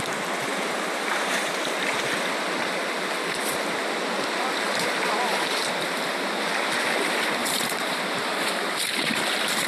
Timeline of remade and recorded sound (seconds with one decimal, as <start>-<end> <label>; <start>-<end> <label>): 0.0-0.5 recorded; 0.5-1.5 remade; 1.5-7.4 recorded; 7.4-8.0 remade; 8.0-9.7 recorded